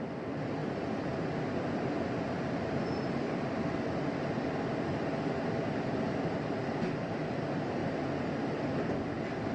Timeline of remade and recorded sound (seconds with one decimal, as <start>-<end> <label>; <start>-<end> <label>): 0.0-7.8 remade; 7.8-9.5 recorded